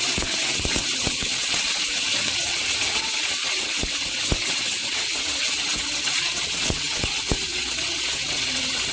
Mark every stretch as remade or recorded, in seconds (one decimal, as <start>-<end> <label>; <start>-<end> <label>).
0.0-8.9 remade